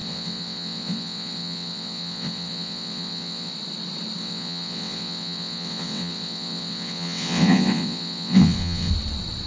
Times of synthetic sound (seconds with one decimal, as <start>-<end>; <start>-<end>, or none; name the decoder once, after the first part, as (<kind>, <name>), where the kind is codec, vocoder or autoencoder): 0.0-3.5 (vocoder, WaveNeXt); 4.2-8.9